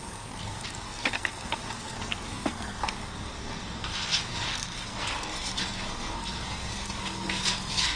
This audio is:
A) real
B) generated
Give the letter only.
B